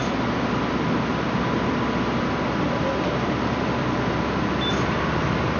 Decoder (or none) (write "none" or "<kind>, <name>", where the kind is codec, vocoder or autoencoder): none